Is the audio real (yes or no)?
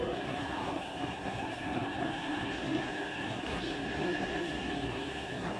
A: no